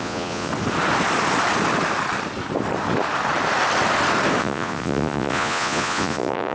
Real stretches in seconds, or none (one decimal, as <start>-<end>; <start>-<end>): 0.5-4.4